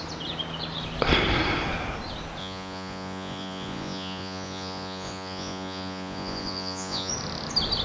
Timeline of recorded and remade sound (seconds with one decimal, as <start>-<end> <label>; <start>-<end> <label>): 0.0-2.4 recorded; 2.4-7.1 remade; 7.1-7.8 recorded